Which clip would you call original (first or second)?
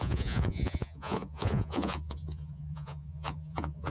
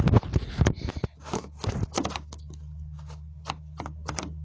second